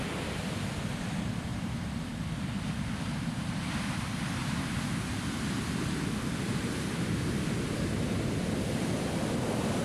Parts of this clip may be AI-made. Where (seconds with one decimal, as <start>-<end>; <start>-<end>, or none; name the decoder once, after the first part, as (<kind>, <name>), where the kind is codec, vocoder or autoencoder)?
0.0-4.4 (vocoder, BigVGAN v2)